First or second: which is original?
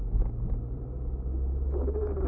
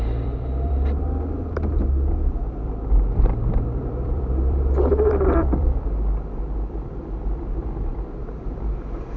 first